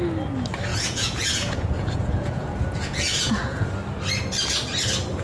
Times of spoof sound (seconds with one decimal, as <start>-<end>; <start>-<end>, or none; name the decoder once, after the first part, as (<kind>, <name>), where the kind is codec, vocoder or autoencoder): 0.7-3.7 (vocoder, Vocos)